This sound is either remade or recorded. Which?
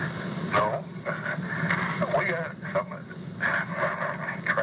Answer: recorded